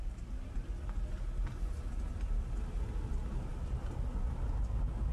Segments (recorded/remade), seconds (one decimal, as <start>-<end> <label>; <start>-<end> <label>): 0.0-5.1 recorded